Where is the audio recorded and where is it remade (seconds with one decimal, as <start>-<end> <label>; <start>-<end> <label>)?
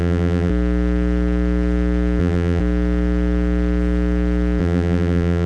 0.0-0.5 remade; 0.5-2.2 recorded; 2.2-2.6 remade; 2.6-4.6 recorded; 4.6-5.5 remade